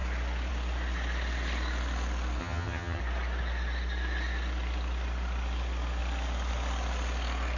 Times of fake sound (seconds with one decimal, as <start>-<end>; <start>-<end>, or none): 2.4-3.0